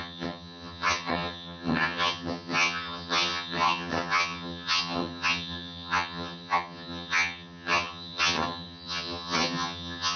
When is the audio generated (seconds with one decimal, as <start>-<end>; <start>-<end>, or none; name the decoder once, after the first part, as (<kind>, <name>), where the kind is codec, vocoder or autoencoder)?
0.0-10.2 (vocoder, HiFi-GAN)